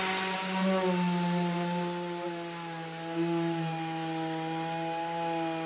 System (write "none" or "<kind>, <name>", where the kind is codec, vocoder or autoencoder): none